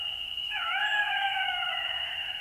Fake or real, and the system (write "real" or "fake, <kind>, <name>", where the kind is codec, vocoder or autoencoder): fake, autoencoder, DAC-VAE